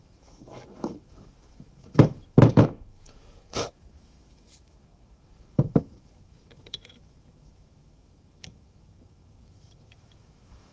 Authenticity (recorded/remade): remade